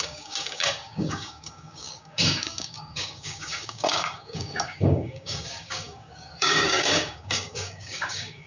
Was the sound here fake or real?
fake